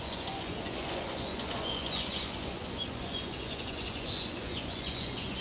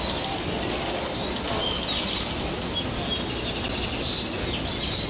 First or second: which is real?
second